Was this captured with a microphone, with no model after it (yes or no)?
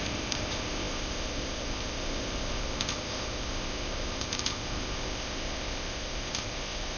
no